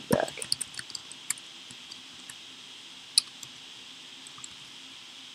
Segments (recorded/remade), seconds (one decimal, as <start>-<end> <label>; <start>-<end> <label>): 0.0-5.3 recorded